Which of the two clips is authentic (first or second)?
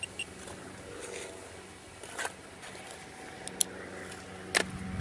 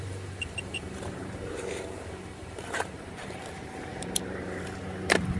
first